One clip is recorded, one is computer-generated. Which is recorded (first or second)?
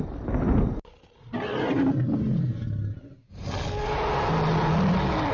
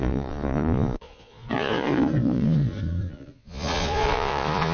first